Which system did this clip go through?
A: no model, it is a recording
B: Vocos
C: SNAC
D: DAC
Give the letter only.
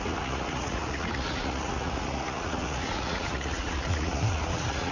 B